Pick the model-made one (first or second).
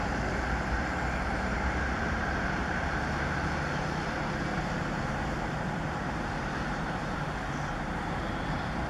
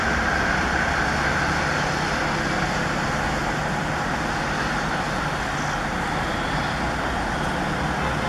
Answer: first